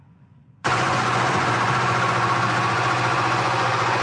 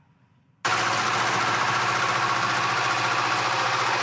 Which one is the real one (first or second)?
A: second